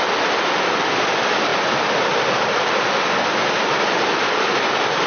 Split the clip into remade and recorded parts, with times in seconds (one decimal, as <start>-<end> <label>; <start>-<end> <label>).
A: 0.0-5.1 recorded